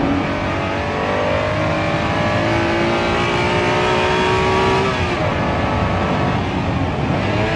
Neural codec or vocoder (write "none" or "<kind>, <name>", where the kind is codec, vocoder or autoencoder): none